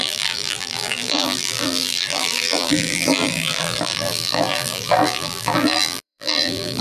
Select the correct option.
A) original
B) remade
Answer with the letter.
B